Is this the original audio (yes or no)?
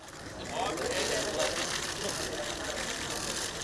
yes